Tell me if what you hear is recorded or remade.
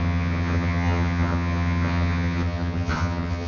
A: remade